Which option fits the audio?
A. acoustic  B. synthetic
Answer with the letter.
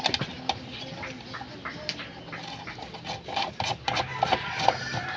A